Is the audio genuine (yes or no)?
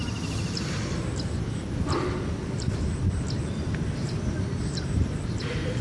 no